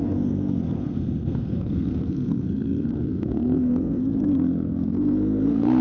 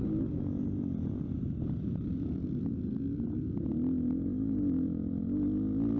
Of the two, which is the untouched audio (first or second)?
second